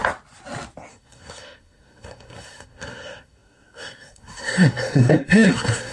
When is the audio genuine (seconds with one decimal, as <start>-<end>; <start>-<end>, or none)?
0.0-0.9